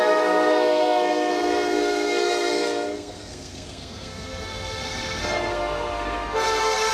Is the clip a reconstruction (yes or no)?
yes